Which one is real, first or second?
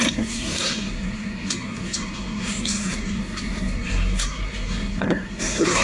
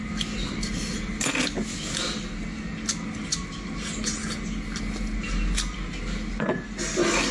second